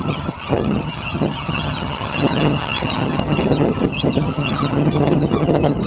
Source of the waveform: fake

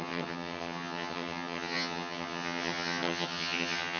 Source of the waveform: fake